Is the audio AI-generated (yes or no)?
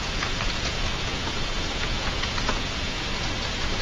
yes